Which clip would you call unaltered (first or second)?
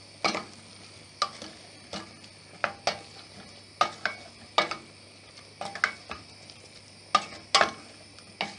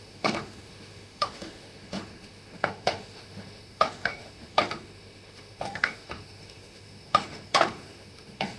first